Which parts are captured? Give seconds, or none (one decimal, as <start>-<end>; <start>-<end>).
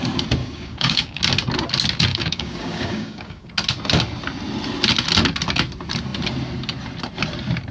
0.0-0.4; 1.2-2.1; 3.5-7.7